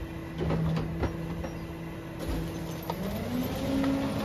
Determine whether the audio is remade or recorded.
recorded